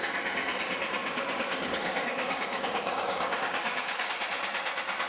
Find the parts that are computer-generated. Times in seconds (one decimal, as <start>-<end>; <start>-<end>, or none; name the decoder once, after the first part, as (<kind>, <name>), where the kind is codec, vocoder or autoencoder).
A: 1.0-4.1 (codec, DAC)

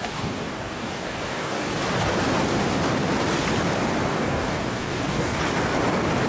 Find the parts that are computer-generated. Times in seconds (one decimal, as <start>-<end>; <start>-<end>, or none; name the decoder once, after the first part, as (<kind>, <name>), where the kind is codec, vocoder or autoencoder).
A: 0.0-1.8 (codec, DAC); 4.1-5.4

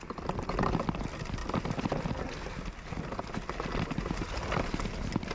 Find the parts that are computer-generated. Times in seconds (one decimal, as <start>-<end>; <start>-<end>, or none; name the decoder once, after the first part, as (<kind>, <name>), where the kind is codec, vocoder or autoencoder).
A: none

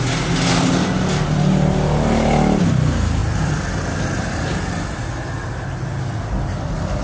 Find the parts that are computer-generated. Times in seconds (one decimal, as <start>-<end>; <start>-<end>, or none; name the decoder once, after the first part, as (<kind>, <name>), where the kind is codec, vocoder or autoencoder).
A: none

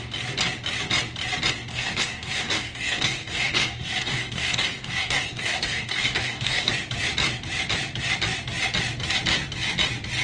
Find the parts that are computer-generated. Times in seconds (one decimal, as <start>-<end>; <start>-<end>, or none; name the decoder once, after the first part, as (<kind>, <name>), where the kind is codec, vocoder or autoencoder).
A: 1.7-6.7 (codec, DAC)

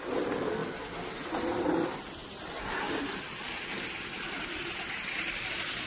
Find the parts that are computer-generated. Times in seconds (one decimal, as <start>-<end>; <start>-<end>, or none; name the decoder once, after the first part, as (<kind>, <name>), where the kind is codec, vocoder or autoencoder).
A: none